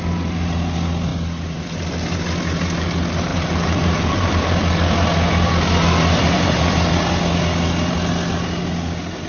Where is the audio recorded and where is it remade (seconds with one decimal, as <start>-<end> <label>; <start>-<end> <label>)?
0.0-3.3 recorded; 3.3-4.4 remade; 4.4-6.1 recorded; 6.1-7.0 remade; 7.0-9.3 recorded